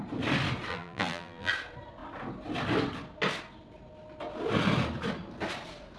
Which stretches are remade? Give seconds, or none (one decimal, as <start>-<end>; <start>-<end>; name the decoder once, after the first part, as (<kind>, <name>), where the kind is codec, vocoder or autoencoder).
0.7-1.5 (vocoder, BigVGAN v2)